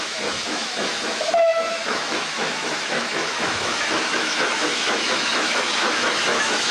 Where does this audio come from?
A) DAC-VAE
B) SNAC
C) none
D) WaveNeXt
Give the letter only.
A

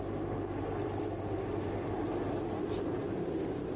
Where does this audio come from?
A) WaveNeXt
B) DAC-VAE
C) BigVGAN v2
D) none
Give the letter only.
D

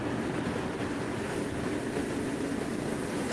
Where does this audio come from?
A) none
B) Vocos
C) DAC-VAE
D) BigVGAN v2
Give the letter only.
A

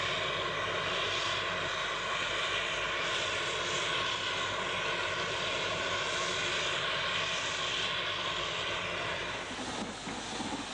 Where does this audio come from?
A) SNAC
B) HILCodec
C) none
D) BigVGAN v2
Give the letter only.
C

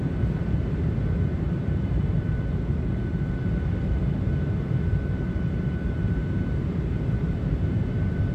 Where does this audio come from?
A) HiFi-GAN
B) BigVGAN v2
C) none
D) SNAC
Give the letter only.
B